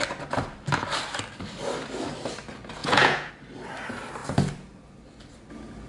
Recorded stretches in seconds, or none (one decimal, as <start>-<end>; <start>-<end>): 0.0-2.8; 3.3-5.9